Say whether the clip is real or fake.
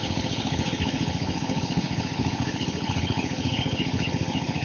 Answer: fake